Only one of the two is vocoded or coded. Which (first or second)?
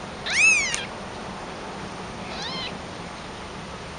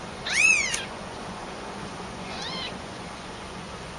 second